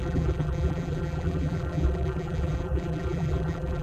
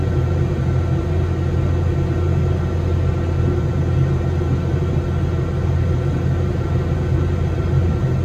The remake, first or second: first